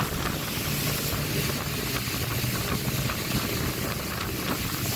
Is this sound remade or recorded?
recorded